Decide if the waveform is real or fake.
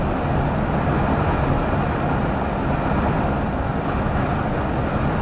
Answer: real